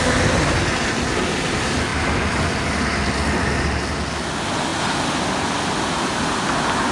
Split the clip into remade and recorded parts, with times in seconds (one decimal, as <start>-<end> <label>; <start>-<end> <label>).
0.0-6.9 recorded